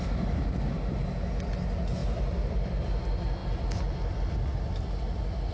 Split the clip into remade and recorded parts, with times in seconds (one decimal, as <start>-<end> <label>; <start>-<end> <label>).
0.0-2.0 recorded; 2.0-2.8 remade; 2.8-5.5 recorded